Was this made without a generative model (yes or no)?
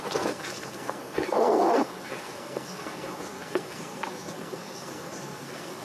no